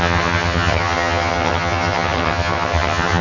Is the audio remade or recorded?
remade